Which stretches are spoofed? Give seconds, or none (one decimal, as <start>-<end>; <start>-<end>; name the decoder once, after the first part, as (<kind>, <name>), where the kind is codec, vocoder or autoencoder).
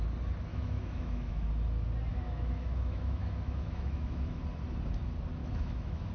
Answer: 0.5-1.5 (autoencoder, DAC-VAE); 2.1-4.4; 5.4-6.1